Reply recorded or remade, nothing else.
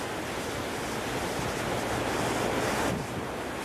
recorded